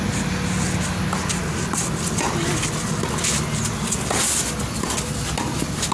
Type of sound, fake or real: real